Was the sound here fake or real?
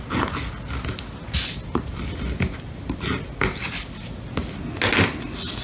real